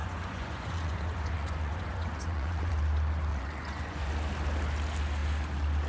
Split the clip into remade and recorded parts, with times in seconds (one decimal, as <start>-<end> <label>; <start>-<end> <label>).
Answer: 0.0-2.7 remade; 2.7-3.3 recorded; 3.3-4.1 remade; 4.1-5.9 recorded